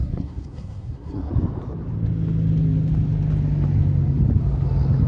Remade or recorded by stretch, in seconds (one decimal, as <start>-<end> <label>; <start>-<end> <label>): 0.0-1.3 remade; 1.3-5.1 recorded